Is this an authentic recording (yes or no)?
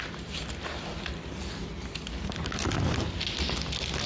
yes